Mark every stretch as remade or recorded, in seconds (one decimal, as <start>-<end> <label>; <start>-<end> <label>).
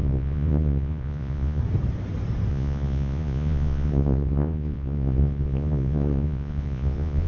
0.0-1.6 remade; 1.6-2.5 recorded; 2.5-7.3 remade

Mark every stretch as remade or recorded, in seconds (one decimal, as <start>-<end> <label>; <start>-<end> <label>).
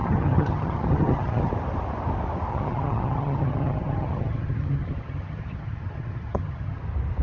0.0-1.5 remade; 1.5-2.5 recorded; 2.5-6.8 remade; 6.8-7.2 recorded